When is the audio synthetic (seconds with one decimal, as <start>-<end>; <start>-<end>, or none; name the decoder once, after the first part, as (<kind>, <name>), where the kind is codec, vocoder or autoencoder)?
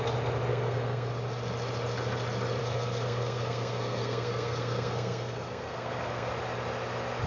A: 0.5-1.1 (codec, SNAC); 2.6-6.3